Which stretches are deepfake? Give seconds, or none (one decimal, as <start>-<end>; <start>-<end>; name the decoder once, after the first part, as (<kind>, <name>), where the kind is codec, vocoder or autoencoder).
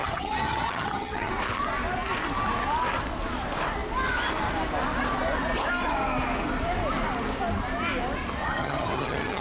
0.0-1.3 (vocoder, HiFi-GAN); 8.4-9.4